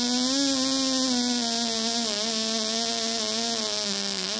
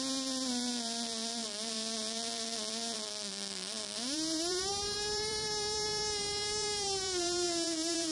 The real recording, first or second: first